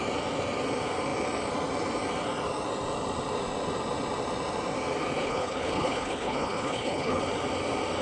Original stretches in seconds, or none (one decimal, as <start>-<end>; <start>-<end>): 0.0-5.2; 7.2-8.0